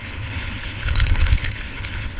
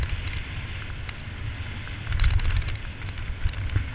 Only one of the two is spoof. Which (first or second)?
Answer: first